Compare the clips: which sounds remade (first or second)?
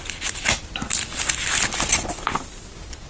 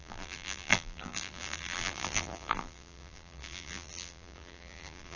second